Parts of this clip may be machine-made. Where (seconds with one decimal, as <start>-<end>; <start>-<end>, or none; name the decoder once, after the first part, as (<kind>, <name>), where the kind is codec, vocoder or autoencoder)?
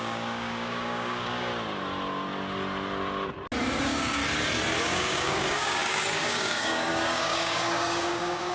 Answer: 0.0-1.5 (codec, DAC); 3.8-4.2; 4.8-8.5